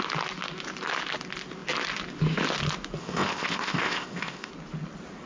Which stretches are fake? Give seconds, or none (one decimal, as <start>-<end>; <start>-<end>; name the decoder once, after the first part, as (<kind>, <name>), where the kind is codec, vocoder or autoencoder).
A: 3.0-4.5 (codec, ZipCodec)